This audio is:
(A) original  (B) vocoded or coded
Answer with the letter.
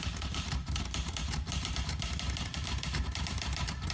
B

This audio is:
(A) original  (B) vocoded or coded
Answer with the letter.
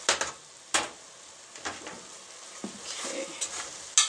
A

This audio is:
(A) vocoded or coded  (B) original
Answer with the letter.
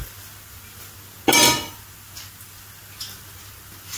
B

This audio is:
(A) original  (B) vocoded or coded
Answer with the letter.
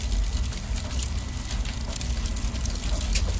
A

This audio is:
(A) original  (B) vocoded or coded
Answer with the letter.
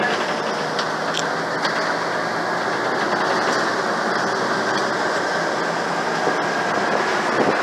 A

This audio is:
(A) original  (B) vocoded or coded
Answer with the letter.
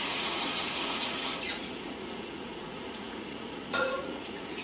B